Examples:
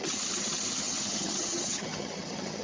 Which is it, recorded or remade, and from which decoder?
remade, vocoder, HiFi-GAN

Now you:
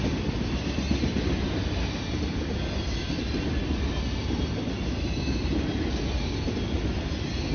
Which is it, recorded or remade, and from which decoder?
recorded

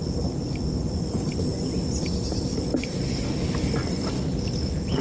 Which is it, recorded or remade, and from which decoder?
recorded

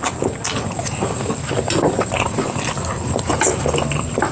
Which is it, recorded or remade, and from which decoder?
recorded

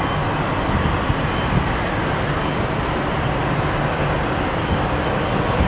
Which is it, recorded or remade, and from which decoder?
recorded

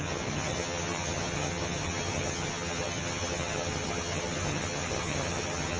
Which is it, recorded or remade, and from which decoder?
remade, vocoder, HiFi-GAN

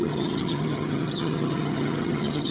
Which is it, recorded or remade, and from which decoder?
remade, vocoder, HiFi-GAN